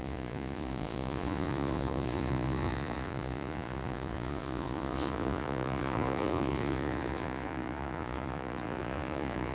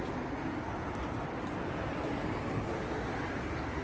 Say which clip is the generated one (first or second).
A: first